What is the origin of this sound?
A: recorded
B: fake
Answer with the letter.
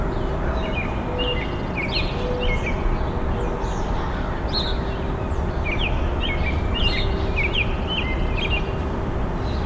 A